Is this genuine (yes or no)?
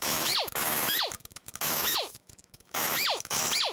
no